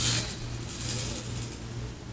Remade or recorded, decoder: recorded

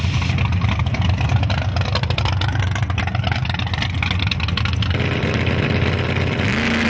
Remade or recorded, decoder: recorded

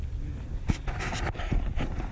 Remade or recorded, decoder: recorded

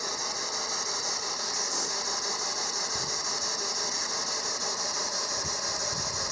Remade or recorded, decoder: recorded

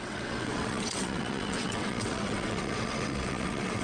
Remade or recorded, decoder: remade, vocoder, WaveNeXt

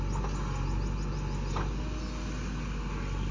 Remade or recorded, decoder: recorded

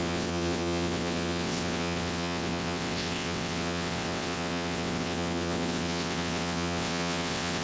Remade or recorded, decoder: remade, vocoder, WaveNeXt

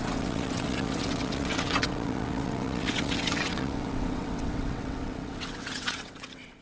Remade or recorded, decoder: remade, vocoder, WaveNeXt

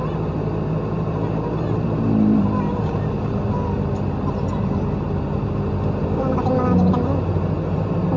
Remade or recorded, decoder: recorded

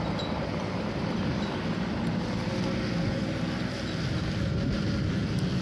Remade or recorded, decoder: recorded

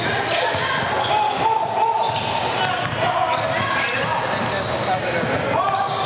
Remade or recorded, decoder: recorded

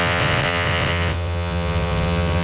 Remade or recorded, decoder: remade, vocoder, WaveNeXt